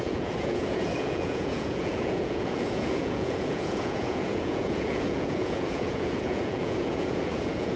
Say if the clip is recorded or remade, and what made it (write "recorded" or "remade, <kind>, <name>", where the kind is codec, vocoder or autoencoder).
remade, vocoder, Vocos